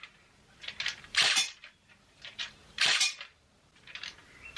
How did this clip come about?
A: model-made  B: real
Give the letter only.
A